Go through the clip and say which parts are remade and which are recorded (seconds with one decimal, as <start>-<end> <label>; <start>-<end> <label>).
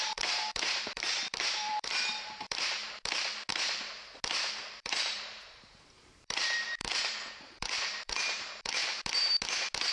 0.0-2.8 remade; 2.8-3.5 recorded; 3.5-4.0 remade; 4.0-4.7 recorded; 4.7-8.8 remade; 8.8-9.9 recorded